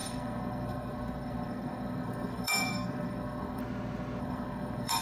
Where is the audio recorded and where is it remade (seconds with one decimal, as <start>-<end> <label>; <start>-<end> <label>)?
0.0-3.6 remade; 3.6-4.2 recorded; 4.2-5.0 remade